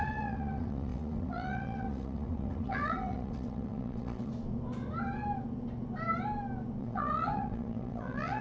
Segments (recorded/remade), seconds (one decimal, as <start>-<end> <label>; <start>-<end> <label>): 0.0-4.3 remade; 4.3-6.8 recorded; 6.8-8.4 remade